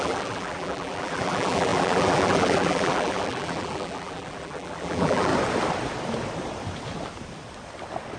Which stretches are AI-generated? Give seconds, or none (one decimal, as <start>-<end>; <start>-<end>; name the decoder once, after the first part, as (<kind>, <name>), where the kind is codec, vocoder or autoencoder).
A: 0.0-5.3 (vocoder, BigVGAN v2)